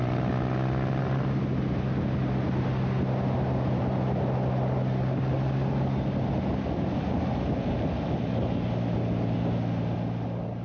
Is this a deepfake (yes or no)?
no